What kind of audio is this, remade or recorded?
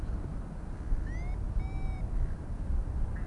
recorded